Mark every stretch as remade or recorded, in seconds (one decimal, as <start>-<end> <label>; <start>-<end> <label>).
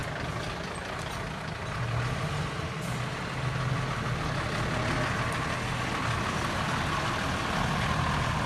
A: 0.0-8.5 recorded